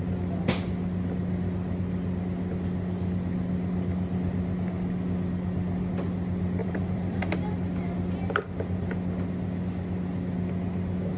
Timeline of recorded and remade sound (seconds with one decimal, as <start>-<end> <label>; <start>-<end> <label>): 0.0-6.6 recorded; 6.6-7.2 remade; 7.2-11.2 recorded